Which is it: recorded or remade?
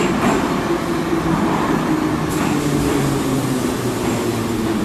recorded